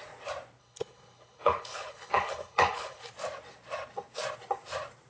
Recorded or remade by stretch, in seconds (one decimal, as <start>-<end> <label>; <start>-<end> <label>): 0.0-0.6 recorded; 0.6-3.1 remade; 3.1-5.1 recorded